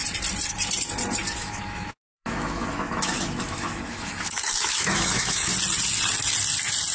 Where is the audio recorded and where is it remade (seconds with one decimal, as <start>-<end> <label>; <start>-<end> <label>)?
0.0-1.4 recorded; 1.4-5.5 remade; 5.5-6.9 recorded